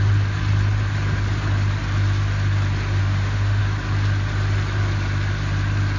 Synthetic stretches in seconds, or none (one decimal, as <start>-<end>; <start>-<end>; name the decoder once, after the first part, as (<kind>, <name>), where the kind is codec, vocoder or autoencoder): 3.0-3.6 (autoencoder, DAC-VAE)